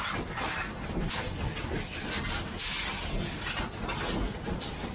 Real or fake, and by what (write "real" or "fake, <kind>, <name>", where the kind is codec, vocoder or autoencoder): real